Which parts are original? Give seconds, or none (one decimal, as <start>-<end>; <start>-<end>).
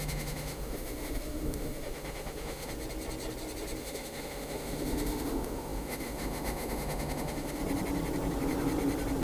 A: 2.7-3.8; 7.6-9.2